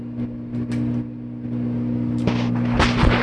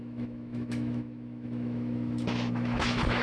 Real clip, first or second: first